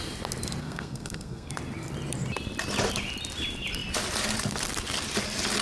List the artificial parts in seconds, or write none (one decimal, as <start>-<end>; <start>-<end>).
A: 0.6-1.5